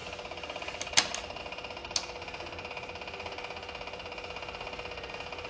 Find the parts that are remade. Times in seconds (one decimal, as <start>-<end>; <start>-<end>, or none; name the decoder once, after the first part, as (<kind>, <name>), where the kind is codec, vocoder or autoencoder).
none